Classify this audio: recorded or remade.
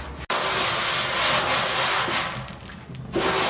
recorded